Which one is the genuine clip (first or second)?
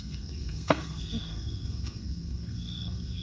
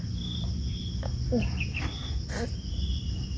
second